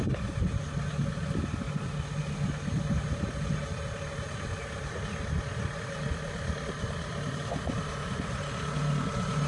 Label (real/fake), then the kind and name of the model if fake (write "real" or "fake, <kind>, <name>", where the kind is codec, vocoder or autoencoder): real